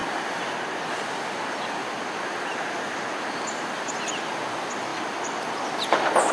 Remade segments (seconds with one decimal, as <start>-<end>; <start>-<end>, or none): none